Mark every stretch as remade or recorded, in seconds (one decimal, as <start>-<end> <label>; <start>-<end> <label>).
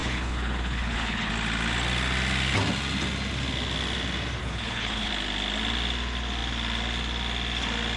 0.0-1.3 remade; 1.3-4.4 recorded; 4.4-5.1 remade; 5.1-8.0 recorded